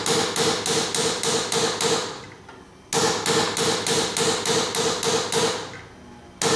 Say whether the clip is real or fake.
real